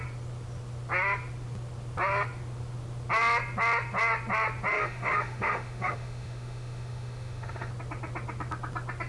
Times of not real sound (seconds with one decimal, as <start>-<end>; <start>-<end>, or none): 4.7-7.7